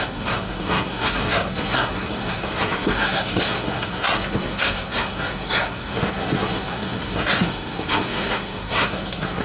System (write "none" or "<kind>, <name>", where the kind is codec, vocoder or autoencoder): codec, SNAC